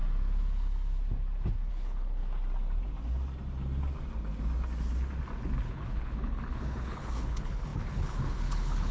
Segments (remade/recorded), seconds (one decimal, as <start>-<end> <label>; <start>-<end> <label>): 0.0-1.7 recorded; 1.7-2.2 remade; 2.2-5.6 recorded; 5.6-8.9 remade